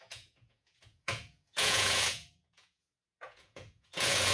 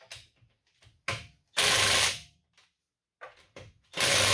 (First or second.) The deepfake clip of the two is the first